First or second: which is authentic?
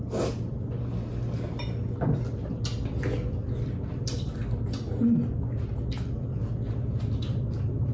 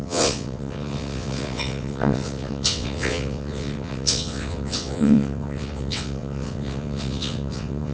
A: first